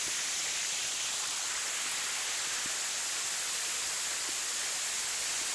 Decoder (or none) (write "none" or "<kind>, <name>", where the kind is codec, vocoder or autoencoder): none